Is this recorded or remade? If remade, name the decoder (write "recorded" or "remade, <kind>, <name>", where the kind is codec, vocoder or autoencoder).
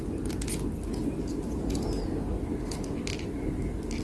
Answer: recorded